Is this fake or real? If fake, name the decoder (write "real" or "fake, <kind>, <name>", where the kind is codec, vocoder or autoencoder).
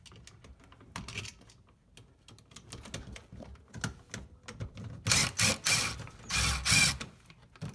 real